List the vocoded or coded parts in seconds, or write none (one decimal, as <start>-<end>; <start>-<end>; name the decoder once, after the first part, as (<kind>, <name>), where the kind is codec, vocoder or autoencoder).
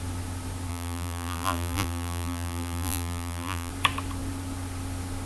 0.7-3.7 (vocoder, BigVGAN v2)